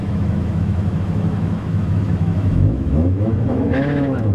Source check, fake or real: fake